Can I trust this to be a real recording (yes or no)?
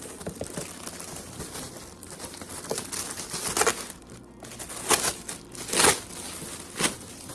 yes